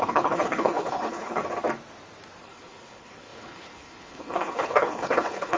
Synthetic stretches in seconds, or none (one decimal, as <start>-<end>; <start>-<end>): 0.0-1.4; 2.4-5.6